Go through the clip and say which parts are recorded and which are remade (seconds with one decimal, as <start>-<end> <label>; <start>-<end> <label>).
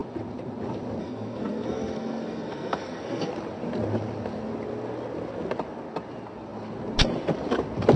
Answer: 0.0-1.0 recorded; 1.0-3.3 remade; 3.3-8.0 recorded